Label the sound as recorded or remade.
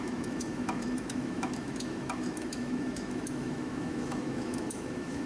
remade